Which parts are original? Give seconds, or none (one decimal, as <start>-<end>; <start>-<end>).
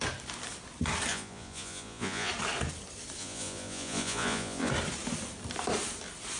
0.0-1.1; 2.3-3.2; 4.7-6.4